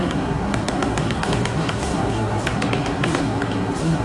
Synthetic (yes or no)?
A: yes